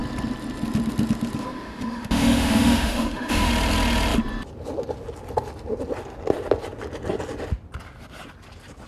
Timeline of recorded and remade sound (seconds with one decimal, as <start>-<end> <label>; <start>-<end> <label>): 0.0-1.4 recorded; 1.4-3.5 remade; 3.5-8.9 recorded